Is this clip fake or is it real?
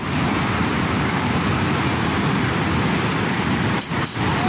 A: real